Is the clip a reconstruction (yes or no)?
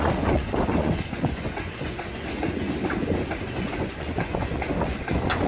yes